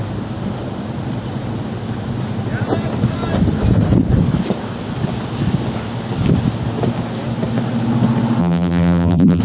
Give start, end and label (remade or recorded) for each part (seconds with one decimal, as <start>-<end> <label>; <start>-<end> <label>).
0.0-8.4 recorded; 8.4-9.4 remade